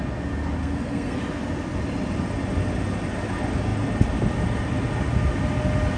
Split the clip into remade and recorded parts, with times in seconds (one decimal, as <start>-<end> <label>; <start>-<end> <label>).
0.0-0.6 recorded; 0.6-1.2 remade; 1.2-6.0 recorded